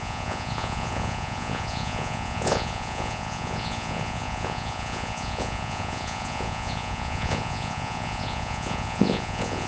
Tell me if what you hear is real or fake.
fake